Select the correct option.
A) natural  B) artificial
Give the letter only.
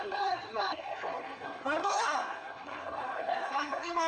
B